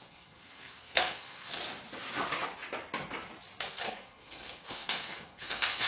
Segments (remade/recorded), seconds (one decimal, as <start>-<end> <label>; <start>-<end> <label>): 0.0-1.6 remade; 1.6-3.6 recorded; 3.6-5.9 remade